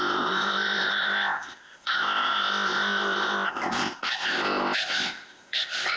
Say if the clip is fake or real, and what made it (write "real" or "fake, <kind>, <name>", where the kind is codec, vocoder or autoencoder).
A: fake, codec, ZipCodec